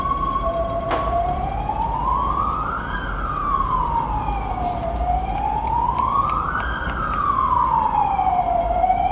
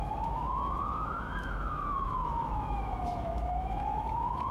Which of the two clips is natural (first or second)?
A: first